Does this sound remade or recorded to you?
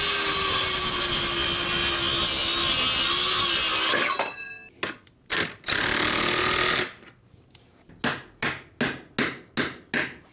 recorded